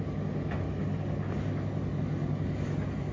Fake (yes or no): no